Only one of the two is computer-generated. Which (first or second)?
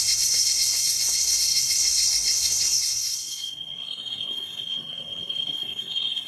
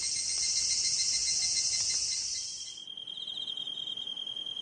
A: first